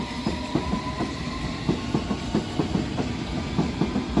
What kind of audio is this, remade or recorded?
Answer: recorded